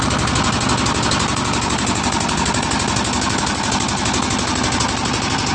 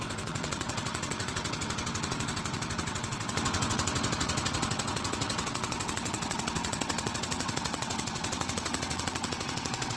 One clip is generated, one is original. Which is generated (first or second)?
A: second